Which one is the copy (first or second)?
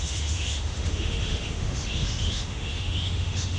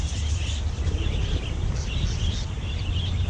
first